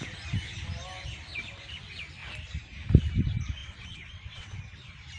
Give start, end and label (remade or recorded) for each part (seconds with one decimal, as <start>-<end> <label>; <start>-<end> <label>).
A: 0.0-3.6 recorded; 3.6-4.6 remade; 4.6-5.2 recorded